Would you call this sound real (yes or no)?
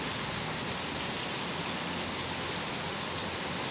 yes